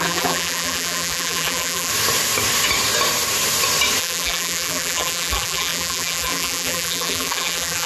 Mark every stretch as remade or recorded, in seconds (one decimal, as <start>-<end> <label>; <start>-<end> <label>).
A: 0.0-1.9 remade; 1.9-4.0 recorded; 4.0-7.9 remade